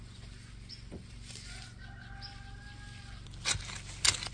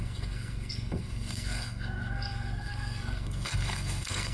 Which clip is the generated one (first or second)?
second